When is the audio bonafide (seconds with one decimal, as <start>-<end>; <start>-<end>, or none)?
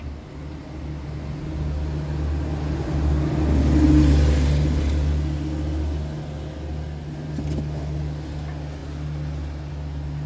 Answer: 0.0-10.3